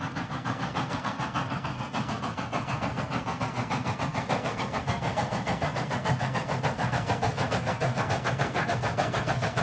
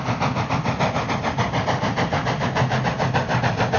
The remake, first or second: first